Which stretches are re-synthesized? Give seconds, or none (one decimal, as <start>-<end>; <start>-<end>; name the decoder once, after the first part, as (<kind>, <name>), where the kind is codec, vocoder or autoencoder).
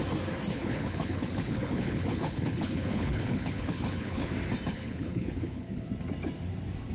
0.5-4.3 (codec, HILCodec); 4.7-5.9